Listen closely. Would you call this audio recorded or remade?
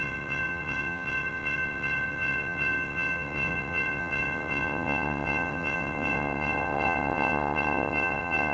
remade